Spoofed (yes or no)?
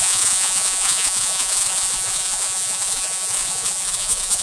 yes